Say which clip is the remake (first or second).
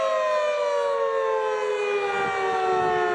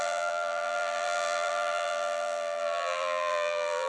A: second